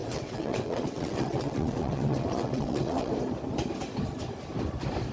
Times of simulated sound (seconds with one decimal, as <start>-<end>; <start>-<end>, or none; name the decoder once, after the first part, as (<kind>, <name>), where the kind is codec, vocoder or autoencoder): 0.0-3.1 (vocoder, WaveNeXt)